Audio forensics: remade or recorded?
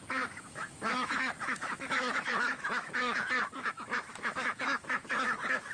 remade